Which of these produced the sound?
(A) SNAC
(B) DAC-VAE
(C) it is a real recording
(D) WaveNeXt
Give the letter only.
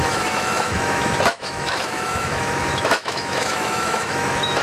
B